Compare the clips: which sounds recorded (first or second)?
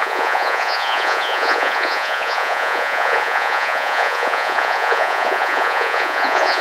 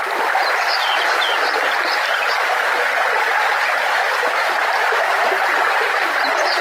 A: second